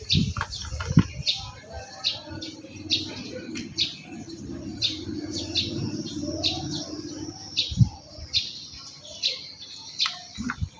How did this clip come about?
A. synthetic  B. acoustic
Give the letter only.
B